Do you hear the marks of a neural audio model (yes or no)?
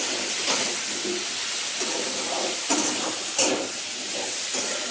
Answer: no